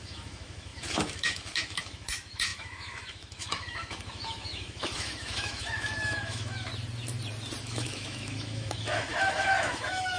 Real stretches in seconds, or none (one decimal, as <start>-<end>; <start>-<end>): 6.7-7.6